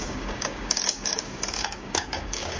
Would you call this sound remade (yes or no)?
yes